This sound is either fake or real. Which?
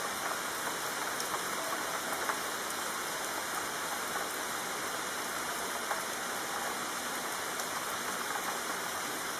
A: real